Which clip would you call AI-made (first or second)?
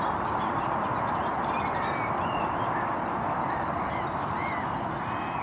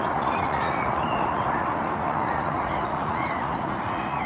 second